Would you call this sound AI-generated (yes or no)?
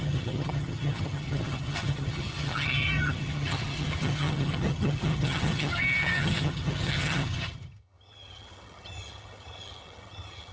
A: yes